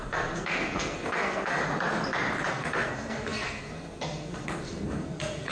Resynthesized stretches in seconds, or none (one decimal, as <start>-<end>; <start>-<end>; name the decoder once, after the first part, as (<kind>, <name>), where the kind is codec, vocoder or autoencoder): 0.0-1.6 (codec, SNAC); 2.5-5.5